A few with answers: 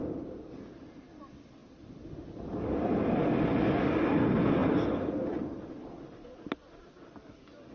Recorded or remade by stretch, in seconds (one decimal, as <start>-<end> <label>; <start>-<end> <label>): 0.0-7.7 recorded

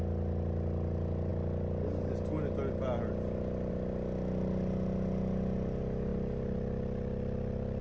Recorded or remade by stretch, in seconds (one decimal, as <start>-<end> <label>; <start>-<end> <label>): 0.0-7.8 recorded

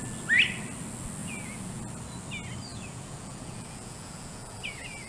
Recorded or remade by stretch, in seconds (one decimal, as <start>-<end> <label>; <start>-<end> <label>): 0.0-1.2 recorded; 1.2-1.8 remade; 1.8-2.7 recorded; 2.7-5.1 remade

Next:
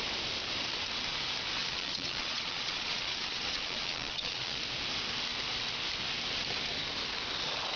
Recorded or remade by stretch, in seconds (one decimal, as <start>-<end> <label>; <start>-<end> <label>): 0.0-1.6 recorded; 1.6-4.6 remade; 4.6-7.8 recorded

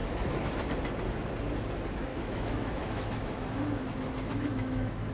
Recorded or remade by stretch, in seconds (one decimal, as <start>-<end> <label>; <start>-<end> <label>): 0.0-0.7 remade; 0.7-2.1 recorded; 2.1-5.1 remade

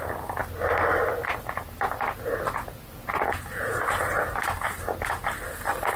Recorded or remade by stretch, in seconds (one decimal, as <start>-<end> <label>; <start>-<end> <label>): 0.0-3.0 recorded; 3.0-4.0 remade; 4.0-6.0 recorded

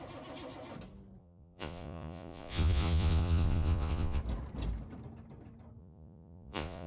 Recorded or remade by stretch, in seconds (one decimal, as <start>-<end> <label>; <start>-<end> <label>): 0.0-1.2 recorded; 1.2-4.2 remade; 4.2-5.8 recorded; 5.8-6.9 remade

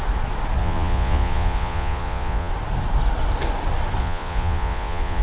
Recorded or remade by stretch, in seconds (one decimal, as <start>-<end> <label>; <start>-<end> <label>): 0.0-0.6 recorded; 0.6-2.5 remade; 2.5-4.0 recorded; 4.0-5.2 remade